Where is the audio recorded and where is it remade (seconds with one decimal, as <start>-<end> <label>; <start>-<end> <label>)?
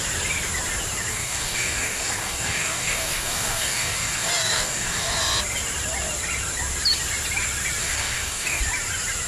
0.0-1.1 recorded; 1.1-5.2 remade; 5.2-7.8 recorded; 7.8-8.6 remade; 8.6-9.3 recorded